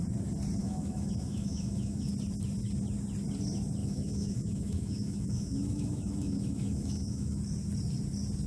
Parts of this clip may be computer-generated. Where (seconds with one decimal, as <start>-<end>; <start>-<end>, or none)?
0.6-2.1; 3.8-7.4